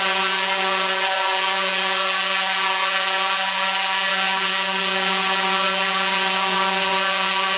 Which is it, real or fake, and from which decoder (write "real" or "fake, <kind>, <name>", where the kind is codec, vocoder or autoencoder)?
fake, vocoder, Vocos